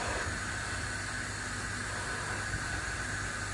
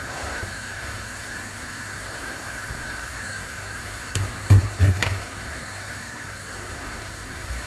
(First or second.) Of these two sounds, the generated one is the second